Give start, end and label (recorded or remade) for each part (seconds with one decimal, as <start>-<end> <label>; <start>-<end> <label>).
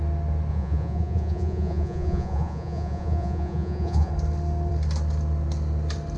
0.0-0.5 recorded; 0.5-4.1 remade; 4.1-6.2 recorded